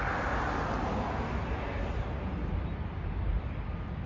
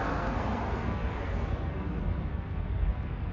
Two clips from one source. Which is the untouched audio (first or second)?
first